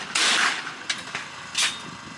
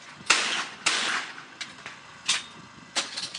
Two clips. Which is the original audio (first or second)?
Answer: first